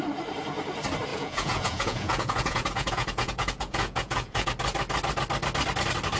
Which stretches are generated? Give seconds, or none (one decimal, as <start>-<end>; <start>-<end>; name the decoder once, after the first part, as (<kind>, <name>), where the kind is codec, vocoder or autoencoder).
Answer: 1.1-4.5 (vocoder, Vocos)